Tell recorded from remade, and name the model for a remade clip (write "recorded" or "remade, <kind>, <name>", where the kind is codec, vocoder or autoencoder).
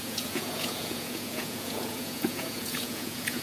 remade, vocoder, Vocos